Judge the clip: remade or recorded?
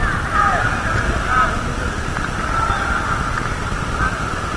recorded